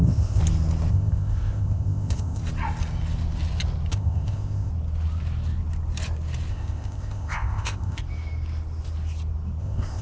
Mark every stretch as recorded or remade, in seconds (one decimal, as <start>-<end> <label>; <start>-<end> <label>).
0.0-0.4 remade; 0.4-0.9 recorded; 0.9-2.4 remade; 2.4-3.9 recorded; 3.9-4.7 remade; 4.7-6.5 recorded; 6.5-8.0 remade; 8.0-9.6 recorded; 9.6-10.0 remade